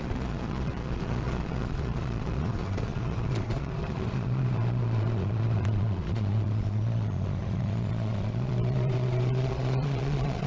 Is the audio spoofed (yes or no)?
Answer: yes